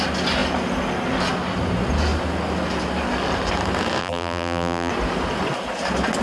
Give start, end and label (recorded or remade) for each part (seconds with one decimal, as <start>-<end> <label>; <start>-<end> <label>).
0.0-4.0 recorded; 4.0-4.9 remade; 4.9-6.2 recorded